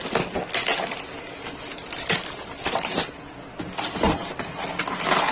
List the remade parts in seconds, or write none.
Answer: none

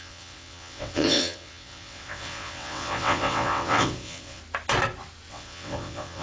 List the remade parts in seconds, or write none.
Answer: 0.0-4.4 (vocoder, WaveNeXt); 5.3-6.2

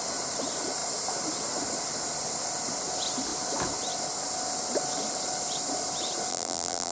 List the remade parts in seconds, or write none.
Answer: 6.3-6.9 (vocoder, BigVGAN v2)

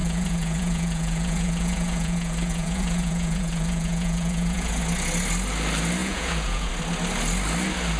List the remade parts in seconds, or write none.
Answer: 0.0-4.8 (vocoder, Vocos); 6.0-6.7

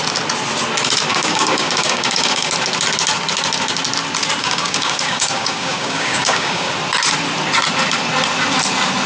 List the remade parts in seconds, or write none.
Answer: 1.1-2.5 (codec, DAC); 4.4-6.7